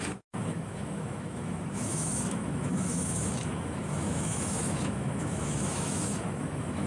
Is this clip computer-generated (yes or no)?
yes